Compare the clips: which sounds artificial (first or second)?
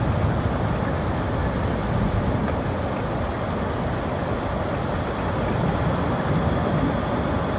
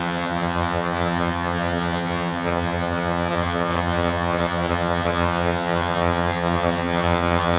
second